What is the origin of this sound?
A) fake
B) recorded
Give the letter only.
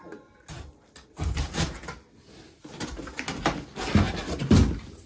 B